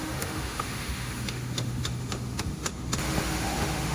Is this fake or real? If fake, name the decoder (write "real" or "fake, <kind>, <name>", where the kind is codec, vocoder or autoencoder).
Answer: fake, autoencoder, DAC-VAE